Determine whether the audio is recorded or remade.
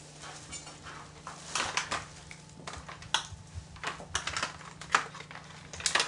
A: recorded